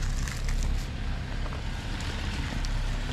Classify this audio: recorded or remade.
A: recorded